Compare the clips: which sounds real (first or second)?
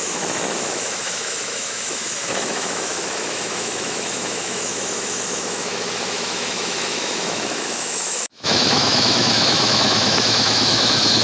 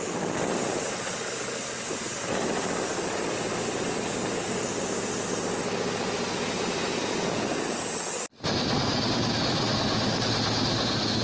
second